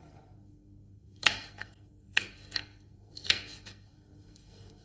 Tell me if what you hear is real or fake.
fake